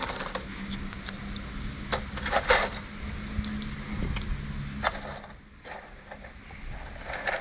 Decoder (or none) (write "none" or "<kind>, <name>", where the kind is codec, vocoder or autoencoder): none